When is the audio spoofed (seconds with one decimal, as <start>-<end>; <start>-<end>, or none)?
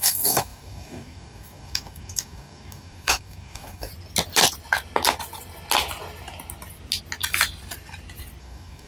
0.0-3.9; 8.4-8.9